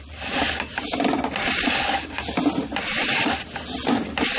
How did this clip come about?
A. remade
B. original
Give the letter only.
B